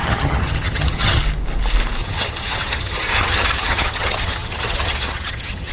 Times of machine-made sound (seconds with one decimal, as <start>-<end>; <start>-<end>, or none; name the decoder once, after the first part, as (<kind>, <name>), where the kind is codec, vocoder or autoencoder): 0.0-1.2 (vocoder, HiFi-GAN); 2.0-5.7